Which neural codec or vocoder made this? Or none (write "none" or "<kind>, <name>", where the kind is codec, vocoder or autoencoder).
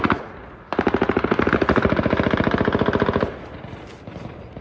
none